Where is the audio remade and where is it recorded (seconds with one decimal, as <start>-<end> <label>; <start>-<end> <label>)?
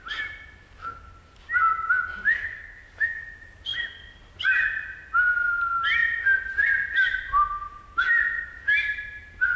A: 0.0-2.3 recorded; 2.3-3.2 remade; 3.2-9.6 recorded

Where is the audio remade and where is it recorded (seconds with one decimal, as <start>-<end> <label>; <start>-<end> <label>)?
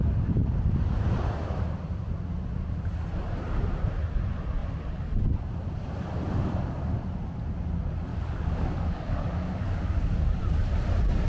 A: 0.0-8.1 recorded; 8.1-10.4 remade; 10.4-11.3 recorded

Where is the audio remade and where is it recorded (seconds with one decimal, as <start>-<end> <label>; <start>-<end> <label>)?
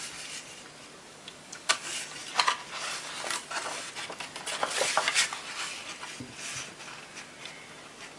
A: 0.0-1.1 recorded; 1.1-1.9 remade; 1.9-8.2 recorded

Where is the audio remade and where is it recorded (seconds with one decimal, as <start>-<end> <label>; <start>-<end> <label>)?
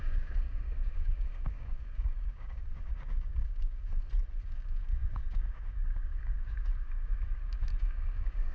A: 0.0-3.9 remade; 3.9-4.4 recorded; 4.4-8.5 remade